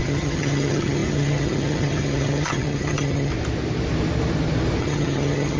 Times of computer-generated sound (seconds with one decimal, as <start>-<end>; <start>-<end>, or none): 0.0-3.3; 4.8-5.6